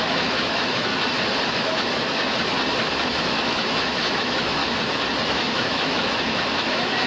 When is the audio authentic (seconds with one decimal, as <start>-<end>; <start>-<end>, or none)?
0.9-1.5; 2.3-3.2; 4.6-5.3